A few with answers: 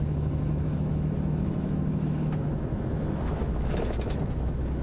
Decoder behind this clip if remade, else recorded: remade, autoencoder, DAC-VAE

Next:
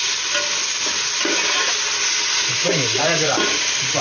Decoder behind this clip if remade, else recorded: recorded